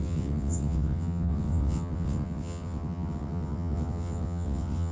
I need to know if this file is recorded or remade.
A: remade